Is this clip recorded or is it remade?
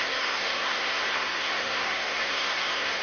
remade